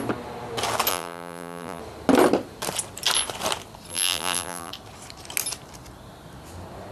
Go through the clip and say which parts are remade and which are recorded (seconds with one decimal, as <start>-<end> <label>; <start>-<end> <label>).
0.0-0.9 recorded; 0.9-1.8 remade; 1.8-3.9 recorded; 3.9-4.7 remade; 4.7-6.9 recorded